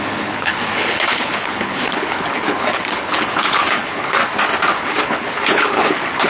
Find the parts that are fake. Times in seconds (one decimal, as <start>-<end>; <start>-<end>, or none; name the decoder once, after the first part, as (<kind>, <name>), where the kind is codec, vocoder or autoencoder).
0.0-4.2 (codec, HILCodec); 4.8-6.3